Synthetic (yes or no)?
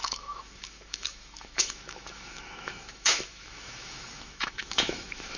yes